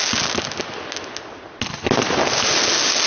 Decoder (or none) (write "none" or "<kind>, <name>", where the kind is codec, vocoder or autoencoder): none